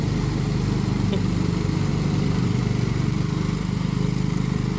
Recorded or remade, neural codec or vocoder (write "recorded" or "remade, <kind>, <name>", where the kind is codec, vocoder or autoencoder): recorded